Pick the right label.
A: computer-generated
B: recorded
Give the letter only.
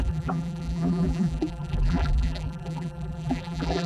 A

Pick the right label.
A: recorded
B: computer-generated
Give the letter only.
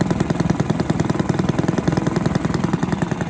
B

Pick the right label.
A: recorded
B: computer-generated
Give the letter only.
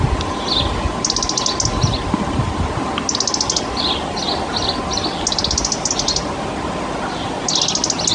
A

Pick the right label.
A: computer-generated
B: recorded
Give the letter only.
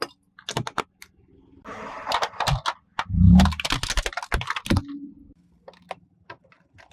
B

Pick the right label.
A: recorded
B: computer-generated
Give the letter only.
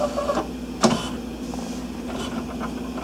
A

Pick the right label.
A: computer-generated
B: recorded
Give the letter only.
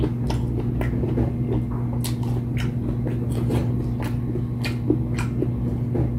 B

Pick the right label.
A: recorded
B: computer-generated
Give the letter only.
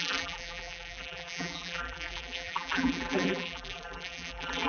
B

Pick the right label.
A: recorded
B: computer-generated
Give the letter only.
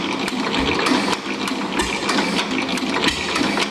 A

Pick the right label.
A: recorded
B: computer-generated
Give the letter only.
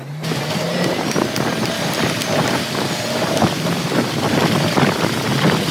A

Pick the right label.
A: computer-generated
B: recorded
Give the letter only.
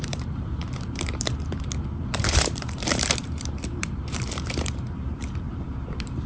A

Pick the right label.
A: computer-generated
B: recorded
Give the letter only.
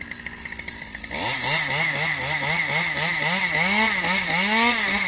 B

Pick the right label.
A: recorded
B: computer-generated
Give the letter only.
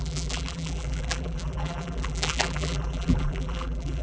B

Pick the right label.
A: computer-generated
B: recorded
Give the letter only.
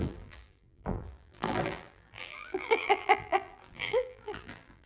A